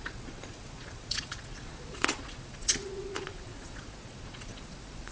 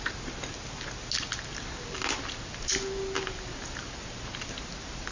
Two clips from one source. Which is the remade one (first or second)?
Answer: first